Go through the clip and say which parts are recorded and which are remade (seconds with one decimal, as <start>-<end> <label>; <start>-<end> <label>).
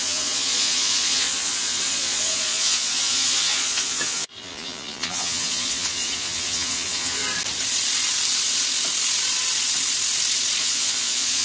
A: 0.0-7.2 remade; 7.2-10.6 recorded; 10.6-11.4 remade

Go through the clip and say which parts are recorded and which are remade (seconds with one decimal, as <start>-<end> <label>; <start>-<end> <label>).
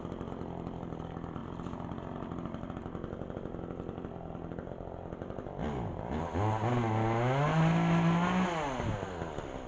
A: 0.0-9.7 recorded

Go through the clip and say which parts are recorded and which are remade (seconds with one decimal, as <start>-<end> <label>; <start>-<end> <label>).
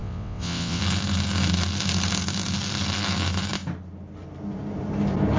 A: 0.0-0.8 remade; 0.8-5.4 recorded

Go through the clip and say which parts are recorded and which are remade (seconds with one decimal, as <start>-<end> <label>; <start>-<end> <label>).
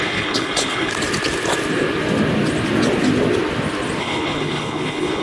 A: 0.0-0.9 remade; 0.9-4.0 recorded; 4.0-5.2 remade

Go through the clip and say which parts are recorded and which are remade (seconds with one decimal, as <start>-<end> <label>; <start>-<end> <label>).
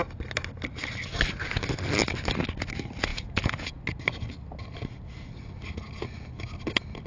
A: 0.0-3.1 recorded; 3.1-3.8 remade; 3.8-7.1 recorded